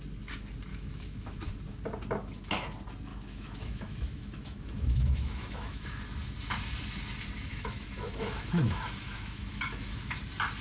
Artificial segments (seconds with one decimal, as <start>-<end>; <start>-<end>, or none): 0.7-1.5; 3.1-6.0; 7.5-10.2